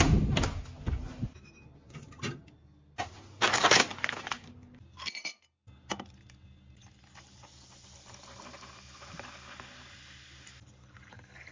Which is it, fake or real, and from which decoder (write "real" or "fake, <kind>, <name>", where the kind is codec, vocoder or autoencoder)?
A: real